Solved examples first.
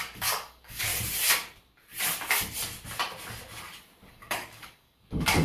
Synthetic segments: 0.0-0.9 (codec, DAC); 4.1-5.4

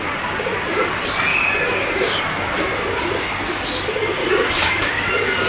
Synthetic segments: 1.3-2.2 (codec, DAC); 4.2-5.1